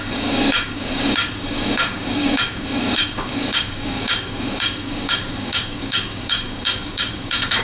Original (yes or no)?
no